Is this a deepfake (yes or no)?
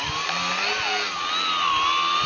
no